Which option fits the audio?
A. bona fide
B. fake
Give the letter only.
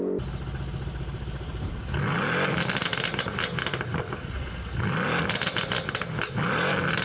A